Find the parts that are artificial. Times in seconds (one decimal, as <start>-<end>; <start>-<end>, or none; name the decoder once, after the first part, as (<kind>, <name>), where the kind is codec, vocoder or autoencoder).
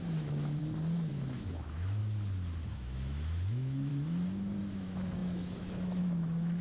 0.0-0.6 (autoencoder, DAC-VAE); 1.1-2.0; 2.7-3.9; 4.6-6.6